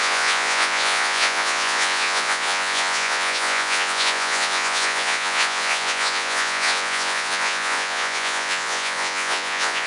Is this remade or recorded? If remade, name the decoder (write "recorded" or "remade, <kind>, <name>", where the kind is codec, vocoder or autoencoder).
remade, vocoder, Vocos